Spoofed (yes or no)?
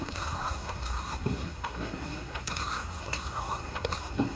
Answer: yes